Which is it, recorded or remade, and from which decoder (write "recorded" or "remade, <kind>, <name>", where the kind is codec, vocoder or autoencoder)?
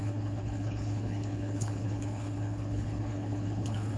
remade, codec, HILCodec